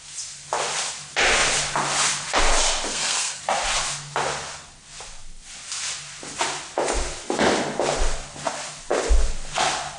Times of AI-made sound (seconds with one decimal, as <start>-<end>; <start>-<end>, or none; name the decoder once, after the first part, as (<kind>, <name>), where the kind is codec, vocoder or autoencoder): 2.9-3.4 (codec, SNAC)